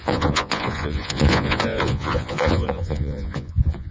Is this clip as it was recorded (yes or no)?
no